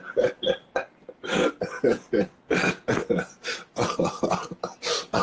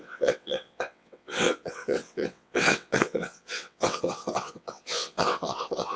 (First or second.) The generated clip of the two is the second